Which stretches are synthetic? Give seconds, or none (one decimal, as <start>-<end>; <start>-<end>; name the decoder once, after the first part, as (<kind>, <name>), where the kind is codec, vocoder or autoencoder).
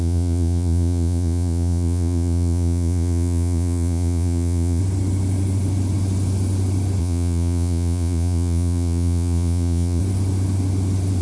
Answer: 0.0-4.8 (vocoder, Vocos); 7.0-10.0